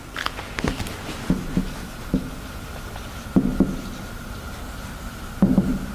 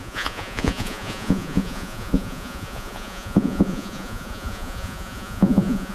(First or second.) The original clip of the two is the first